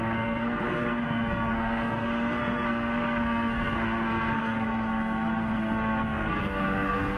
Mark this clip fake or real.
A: fake